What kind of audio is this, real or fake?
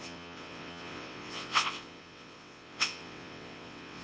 fake